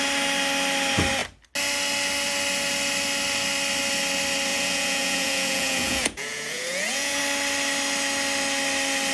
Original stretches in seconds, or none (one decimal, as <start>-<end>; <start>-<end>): 0.0-4.5; 7.2-9.1